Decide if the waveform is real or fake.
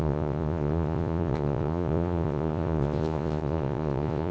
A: fake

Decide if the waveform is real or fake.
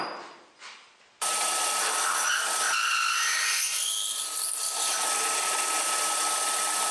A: real